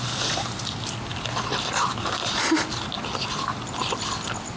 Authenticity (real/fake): real